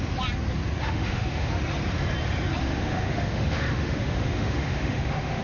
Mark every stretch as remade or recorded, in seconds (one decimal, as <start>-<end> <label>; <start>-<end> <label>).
0.0-0.8 recorded; 0.8-1.5 remade; 1.5-2.6 recorded; 2.6-5.4 remade